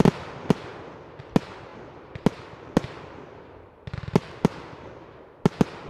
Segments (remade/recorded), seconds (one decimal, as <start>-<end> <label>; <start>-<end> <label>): 0.0-5.9 recorded